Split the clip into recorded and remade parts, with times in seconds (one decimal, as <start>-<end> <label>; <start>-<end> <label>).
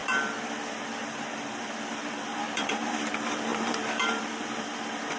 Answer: 0.0-3.1 remade; 3.1-3.5 recorded; 3.5-5.2 remade